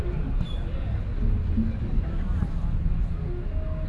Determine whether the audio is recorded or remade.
recorded